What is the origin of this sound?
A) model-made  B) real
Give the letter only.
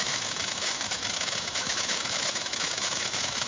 A